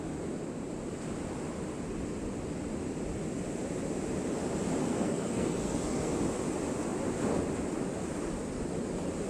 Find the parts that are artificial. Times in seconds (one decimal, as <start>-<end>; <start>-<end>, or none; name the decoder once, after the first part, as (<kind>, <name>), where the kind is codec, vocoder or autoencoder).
4.8-6.1 (codec, SNAC)